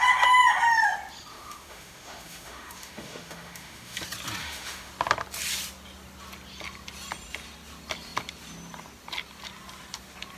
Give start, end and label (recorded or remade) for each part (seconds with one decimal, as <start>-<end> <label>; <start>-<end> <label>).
0.0-1.3 recorded; 1.3-4.0 remade; 4.0-4.4 recorded; 4.4-4.9 remade; 4.9-10.4 recorded